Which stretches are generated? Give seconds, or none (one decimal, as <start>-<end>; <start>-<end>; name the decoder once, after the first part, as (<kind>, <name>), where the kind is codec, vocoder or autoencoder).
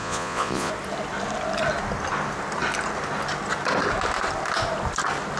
0.0-0.7 (vocoder, Vocos)